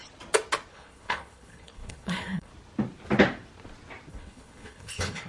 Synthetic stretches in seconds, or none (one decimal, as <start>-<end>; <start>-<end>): 0.7-2.5; 4.1-5.3